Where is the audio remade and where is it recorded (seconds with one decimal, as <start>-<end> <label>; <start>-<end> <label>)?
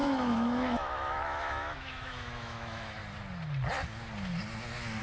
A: 0.0-3.0 remade; 3.0-5.0 recorded